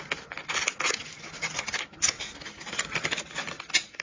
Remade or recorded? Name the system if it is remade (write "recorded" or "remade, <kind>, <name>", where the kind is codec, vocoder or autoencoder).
recorded